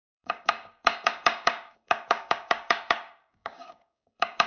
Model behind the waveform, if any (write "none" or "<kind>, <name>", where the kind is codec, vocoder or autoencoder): codec, DAC